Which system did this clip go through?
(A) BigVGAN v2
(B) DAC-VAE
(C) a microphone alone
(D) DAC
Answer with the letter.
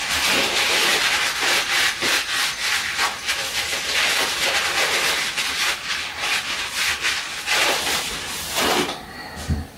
C